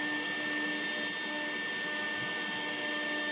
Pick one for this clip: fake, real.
real